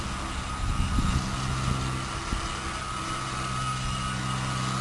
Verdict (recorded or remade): recorded